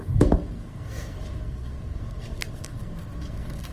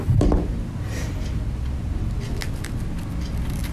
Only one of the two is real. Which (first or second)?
second